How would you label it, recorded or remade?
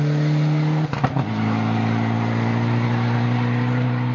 recorded